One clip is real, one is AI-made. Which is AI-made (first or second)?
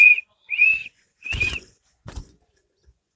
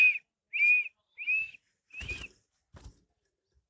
first